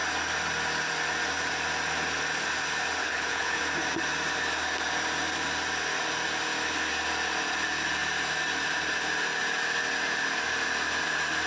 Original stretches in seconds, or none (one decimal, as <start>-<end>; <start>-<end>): 0.0-3.0; 3.6-11.5